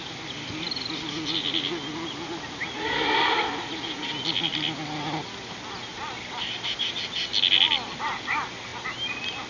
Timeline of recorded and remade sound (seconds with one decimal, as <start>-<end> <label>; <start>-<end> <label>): 0.0-9.5 recorded